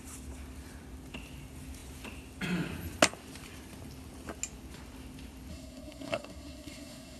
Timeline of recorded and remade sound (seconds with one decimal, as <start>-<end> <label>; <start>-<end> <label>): 0.0-5.5 recorded; 5.5-7.2 remade

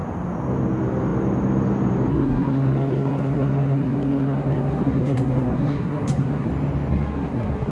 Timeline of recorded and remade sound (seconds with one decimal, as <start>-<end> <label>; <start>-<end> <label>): 0.0-2.1 recorded; 2.1-6.5 remade; 6.5-6.9 recorded; 6.9-7.7 remade

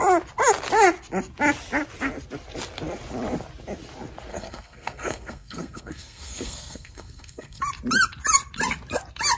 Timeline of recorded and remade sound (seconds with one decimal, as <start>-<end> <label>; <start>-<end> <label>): 0.0-4.3 recorded; 4.3-7.6 remade; 7.6-9.4 recorded